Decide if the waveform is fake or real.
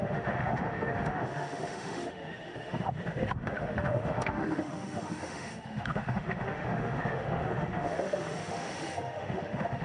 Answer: fake